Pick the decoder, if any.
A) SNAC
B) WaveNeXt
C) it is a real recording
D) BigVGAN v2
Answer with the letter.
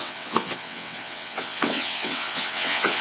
B